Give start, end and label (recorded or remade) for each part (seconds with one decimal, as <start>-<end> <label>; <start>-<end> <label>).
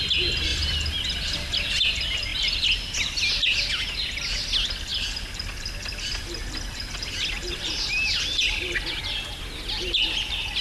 0.0-10.6 recorded